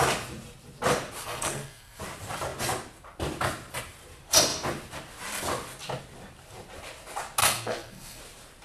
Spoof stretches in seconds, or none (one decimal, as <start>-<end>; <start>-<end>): 1.2-2.0; 7.4-8.2